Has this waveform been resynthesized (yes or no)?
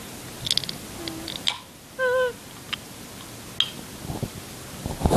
no